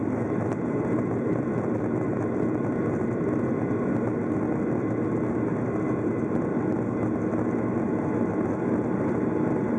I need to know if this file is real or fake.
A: real